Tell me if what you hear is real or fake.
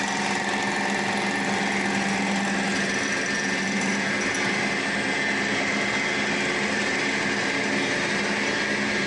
real